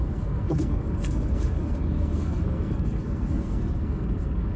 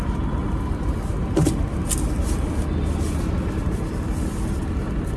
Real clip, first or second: second